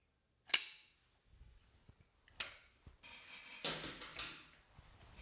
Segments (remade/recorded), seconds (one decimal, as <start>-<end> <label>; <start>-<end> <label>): 0.0-5.2 recorded